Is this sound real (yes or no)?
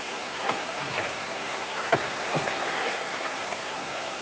no